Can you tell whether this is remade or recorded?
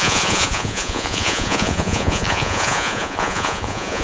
remade